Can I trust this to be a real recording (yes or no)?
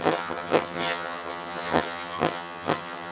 no